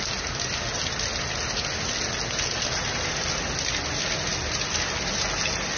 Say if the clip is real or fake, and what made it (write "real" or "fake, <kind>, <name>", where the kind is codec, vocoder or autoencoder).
real